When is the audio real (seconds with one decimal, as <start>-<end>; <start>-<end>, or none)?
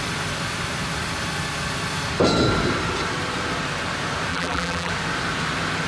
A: 0.0-4.3; 4.9-5.9